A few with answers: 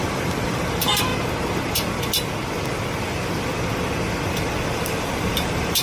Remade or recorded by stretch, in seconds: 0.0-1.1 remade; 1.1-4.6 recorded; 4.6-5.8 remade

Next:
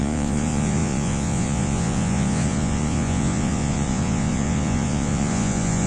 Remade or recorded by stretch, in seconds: 0.0-5.9 remade

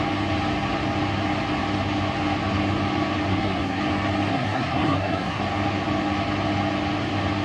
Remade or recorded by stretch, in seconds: 0.0-3.3 recorded; 3.3-3.8 remade; 3.8-4.3 recorded; 4.3-5.4 remade; 5.4-7.4 recorded

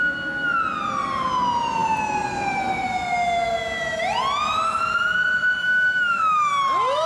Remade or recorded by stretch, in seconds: 0.0-5.6 recorded; 5.6-6.5 remade; 6.5-7.1 recorded